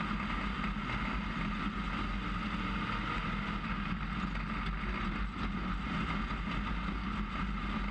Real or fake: real